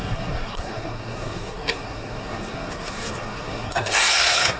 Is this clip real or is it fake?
fake